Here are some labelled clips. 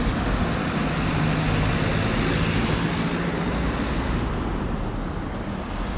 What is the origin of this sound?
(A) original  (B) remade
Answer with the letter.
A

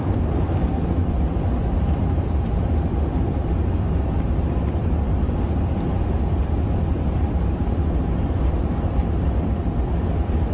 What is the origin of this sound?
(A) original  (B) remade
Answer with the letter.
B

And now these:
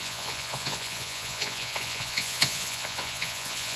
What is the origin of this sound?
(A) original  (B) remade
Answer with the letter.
B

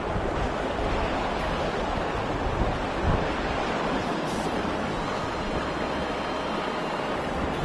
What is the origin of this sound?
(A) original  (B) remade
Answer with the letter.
A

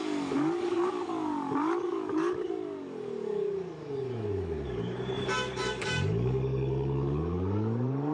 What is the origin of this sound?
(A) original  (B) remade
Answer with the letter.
B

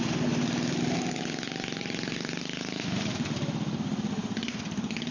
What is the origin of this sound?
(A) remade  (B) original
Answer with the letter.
B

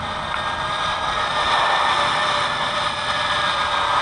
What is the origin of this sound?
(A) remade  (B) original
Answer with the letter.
A